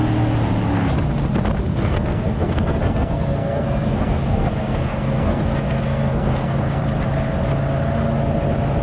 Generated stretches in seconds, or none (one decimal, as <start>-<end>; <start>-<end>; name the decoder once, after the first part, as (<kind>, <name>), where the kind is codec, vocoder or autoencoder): 1.7-6.8 (codec, SNAC)